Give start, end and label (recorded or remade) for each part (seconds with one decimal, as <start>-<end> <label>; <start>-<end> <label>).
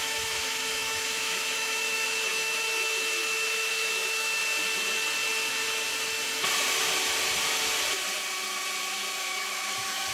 0.0-4.4 remade; 4.4-9.2 recorded; 9.2-10.1 remade